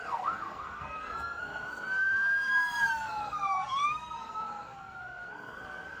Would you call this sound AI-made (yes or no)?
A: yes